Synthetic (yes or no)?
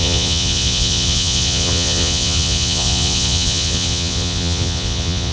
yes